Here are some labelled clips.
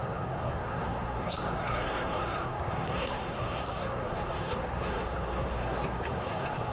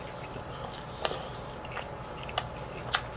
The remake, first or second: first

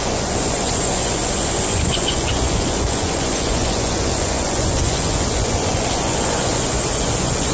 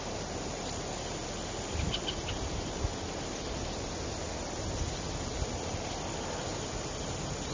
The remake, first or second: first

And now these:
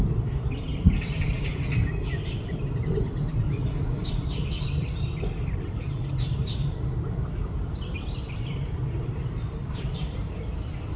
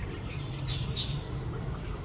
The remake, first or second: first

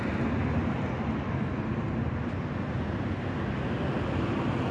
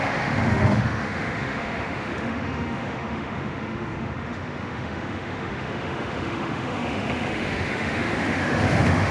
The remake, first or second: second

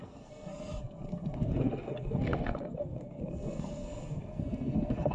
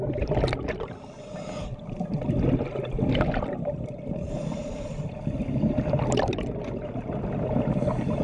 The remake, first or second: first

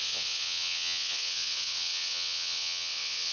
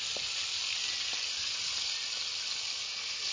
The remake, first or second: first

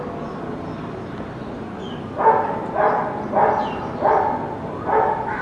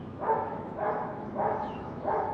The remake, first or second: second